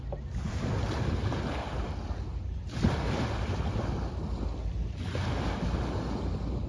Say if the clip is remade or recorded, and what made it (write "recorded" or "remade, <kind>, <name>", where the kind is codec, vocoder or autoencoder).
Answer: recorded